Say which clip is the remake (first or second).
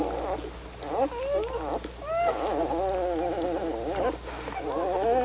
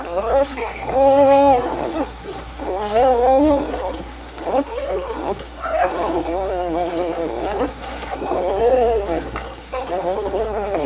second